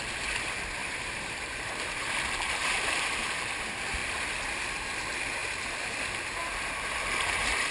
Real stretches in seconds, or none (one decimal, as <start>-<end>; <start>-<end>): 0.0-0.8; 3.5-7.7